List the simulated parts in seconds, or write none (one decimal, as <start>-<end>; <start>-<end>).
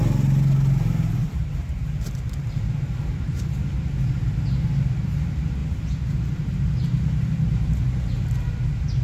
1.2-3.4; 5.6-7.7